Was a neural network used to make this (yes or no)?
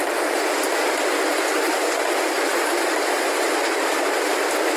yes